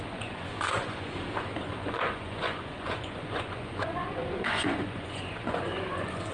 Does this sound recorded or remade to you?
remade